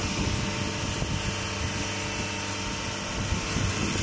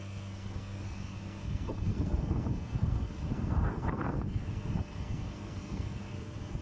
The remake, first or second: second